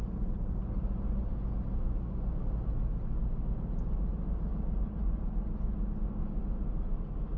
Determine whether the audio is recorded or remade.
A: recorded